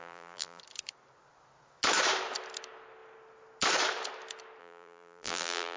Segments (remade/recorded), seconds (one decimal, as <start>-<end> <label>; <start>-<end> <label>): 0.0-0.6 remade; 0.6-4.6 recorded; 4.6-5.8 remade